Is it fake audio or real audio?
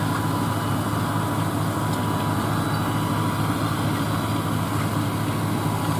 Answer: real